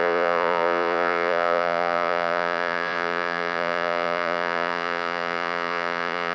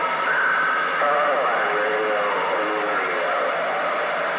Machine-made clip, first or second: first